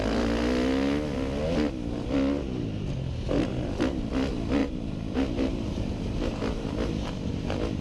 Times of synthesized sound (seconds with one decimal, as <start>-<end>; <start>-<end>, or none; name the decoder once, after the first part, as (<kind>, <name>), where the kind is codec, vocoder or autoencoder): 4.6-7.8 (vocoder, BigVGAN v2)